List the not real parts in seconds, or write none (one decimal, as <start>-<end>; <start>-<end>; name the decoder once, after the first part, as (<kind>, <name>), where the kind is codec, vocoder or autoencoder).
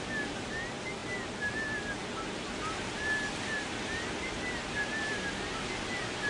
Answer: none